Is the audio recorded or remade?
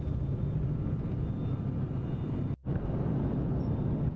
recorded